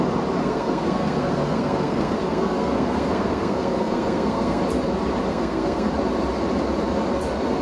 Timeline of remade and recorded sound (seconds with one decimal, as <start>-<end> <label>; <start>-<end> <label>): 0.0-0.4 recorded; 0.4-4.6 remade; 4.6-5.3 recorded; 5.3-5.9 remade; 5.9-7.6 recorded